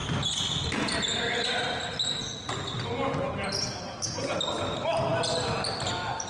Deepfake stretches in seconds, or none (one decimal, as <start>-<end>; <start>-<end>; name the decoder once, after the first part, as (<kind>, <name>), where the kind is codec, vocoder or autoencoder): none